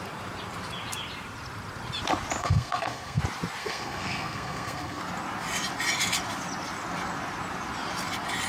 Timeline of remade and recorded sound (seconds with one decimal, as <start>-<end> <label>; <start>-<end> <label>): 0.0-2.4 recorded; 2.4-3.2 remade; 3.2-3.6 recorded; 3.6-5.0 remade; 5.0-8.5 recorded